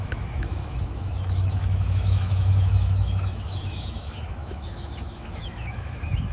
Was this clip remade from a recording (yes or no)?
yes